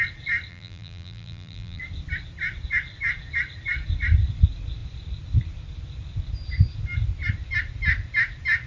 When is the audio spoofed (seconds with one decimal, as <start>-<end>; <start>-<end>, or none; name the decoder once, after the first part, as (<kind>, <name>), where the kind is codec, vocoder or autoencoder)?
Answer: 0.5-1.8 (vocoder, BigVGAN v2)